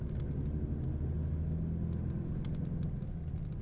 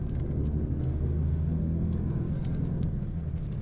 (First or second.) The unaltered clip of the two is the first